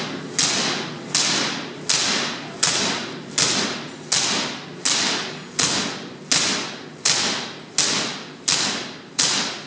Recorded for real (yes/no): yes